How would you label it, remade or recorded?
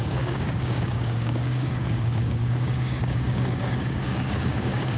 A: remade